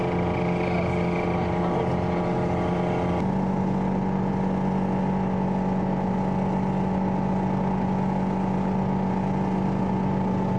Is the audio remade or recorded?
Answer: recorded